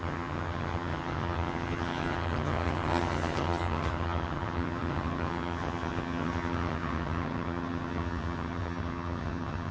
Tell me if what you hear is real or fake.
fake